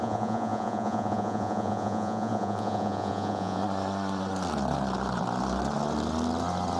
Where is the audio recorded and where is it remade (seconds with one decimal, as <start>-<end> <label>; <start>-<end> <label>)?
0.0-3.6 remade; 3.6-6.8 recorded